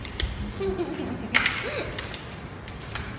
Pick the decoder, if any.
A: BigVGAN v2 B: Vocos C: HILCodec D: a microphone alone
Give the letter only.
A